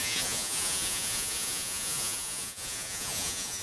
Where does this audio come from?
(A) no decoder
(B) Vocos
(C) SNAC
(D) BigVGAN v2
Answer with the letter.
B